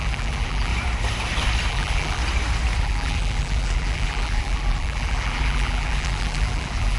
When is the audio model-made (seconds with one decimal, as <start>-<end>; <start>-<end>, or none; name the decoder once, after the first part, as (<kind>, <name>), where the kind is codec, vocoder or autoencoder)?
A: 0.0-0.7 (vocoder, BigVGAN v2); 1.7-2.2; 2.8-7.0